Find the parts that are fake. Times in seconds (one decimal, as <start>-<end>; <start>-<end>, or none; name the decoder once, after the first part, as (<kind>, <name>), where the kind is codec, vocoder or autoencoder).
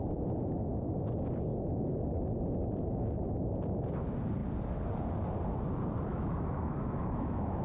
6.1-7.6 (autoencoder, DAC-VAE)